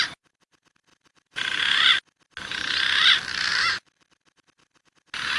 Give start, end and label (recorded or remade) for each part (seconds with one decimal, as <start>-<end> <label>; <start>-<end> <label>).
0.0-0.9 recorded; 0.9-1.6 remade; 1.6-3.5 recorded; 3.5-4.6 remade; 4.6-5.4 recorded